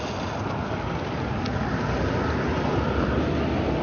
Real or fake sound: real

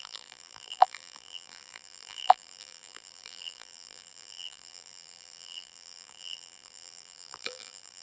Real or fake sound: fake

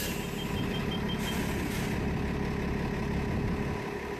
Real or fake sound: real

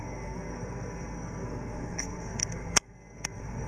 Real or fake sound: fake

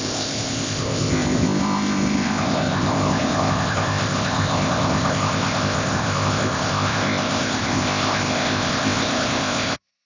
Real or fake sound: fake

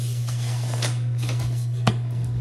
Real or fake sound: fake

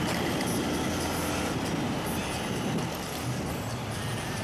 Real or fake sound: real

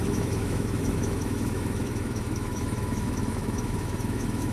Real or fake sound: fake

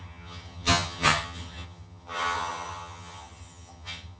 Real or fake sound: fake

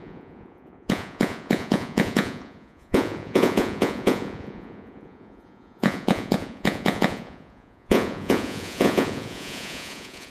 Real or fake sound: fake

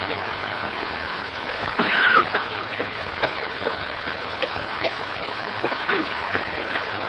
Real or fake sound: fake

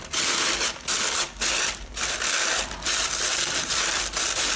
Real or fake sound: fake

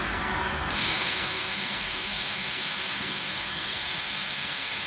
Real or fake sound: fake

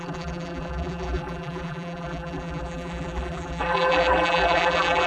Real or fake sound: fake